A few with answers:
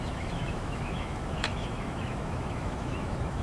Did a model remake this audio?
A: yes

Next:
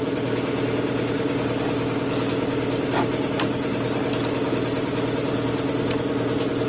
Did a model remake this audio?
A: no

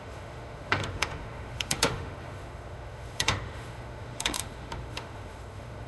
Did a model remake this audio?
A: yes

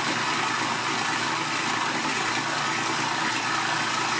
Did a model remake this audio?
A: no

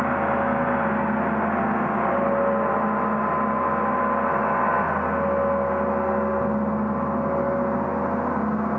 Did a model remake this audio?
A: no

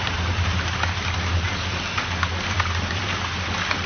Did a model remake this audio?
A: no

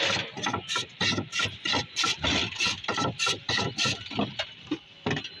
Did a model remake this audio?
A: no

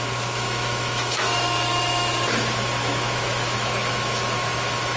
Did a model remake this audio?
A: yes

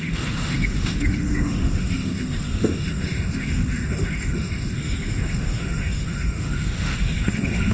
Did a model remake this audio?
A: yes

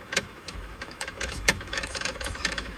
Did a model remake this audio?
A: yes